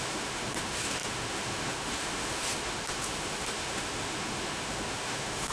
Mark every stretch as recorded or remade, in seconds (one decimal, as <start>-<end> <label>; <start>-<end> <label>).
0.0-5.5 remade